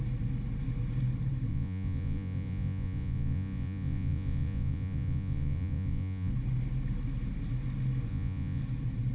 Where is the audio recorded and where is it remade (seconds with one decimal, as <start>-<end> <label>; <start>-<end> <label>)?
0.0-1.5 recorded; 1.5-6.3 remade; 6.3-8.1 recorded; 8.1-8.6 remade; 8.6-9.1 recorded